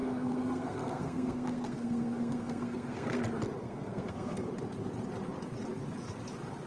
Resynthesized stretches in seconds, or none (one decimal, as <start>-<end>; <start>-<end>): 0.0-3.2; 3.6-4.5